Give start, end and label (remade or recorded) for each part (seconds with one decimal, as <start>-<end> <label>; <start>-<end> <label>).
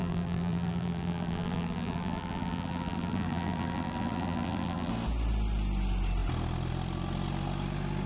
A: 0.0-4.9 remade; 4.9-8.1 recorded